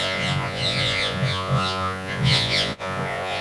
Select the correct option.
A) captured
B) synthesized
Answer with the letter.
B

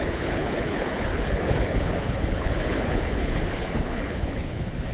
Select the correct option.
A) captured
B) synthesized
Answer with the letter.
B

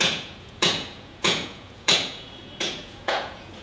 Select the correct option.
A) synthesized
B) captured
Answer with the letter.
A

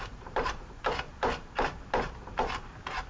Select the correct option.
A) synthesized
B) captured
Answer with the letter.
A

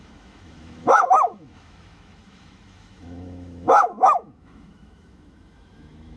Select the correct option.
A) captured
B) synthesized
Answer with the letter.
B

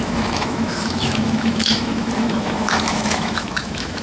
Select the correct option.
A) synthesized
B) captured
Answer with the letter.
A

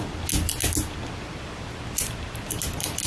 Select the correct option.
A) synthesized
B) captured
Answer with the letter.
B